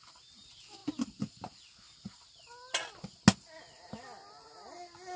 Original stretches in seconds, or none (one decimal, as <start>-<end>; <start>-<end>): 0.0-5.2